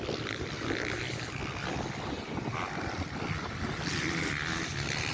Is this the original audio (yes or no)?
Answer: yes